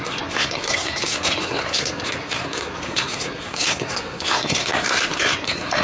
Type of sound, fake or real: fake